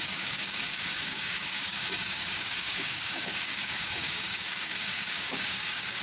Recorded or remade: remade